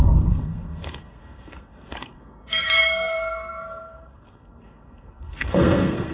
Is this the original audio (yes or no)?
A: no